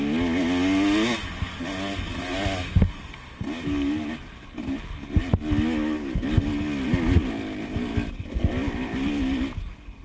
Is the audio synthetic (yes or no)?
no